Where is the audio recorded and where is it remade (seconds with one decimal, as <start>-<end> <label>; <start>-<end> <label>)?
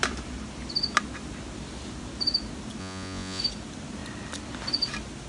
0.0-2.8 recorded; 2.8-3.4 remade; 3.4-5.3 recorded